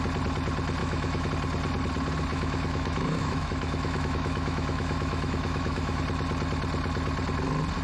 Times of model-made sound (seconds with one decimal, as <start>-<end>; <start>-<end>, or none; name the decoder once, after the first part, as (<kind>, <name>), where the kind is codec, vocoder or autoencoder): 0.8-1.3 (autoencoder, DAC-VAE); 2.3-6.0